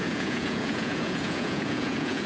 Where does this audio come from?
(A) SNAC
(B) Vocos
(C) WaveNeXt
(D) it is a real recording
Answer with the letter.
B